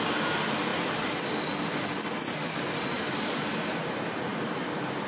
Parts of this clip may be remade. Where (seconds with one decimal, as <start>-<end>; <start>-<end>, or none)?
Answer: none